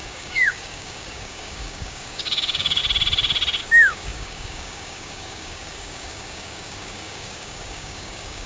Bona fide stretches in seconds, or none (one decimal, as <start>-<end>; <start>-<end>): 2.8-3.6